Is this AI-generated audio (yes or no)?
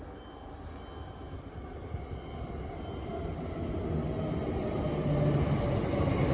no